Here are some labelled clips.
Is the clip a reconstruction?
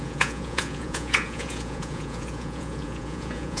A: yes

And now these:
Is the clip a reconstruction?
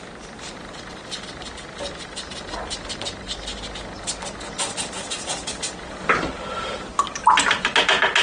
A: no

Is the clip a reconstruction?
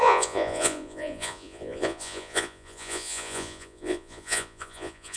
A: yes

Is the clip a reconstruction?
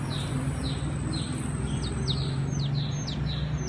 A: no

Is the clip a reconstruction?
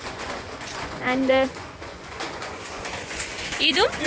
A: yes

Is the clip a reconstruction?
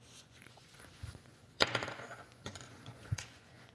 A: yes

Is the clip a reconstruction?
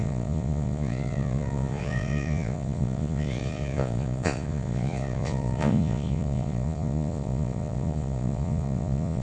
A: yes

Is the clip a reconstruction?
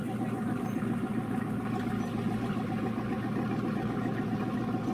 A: no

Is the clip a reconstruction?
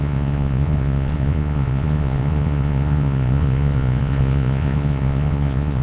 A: yes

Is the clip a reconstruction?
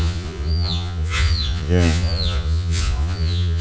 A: yes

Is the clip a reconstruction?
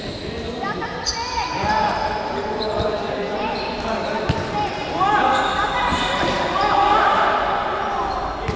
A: no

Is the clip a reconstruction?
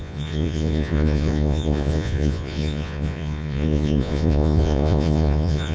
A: yes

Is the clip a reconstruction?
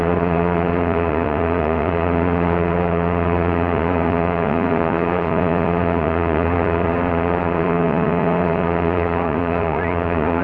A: yes